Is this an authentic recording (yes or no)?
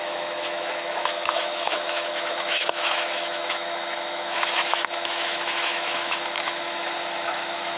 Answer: no